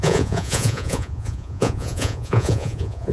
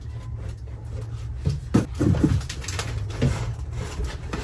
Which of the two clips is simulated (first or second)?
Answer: first